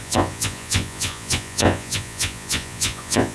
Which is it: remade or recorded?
remade